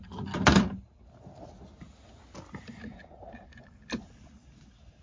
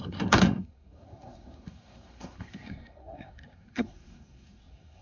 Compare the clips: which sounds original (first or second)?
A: first